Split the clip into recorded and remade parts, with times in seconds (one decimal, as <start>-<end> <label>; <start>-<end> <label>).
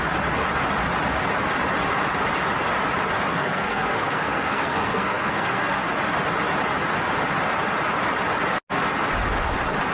0.0-3.3 recorded; 3.3-5.8 remade; 5.8-9.9 recorded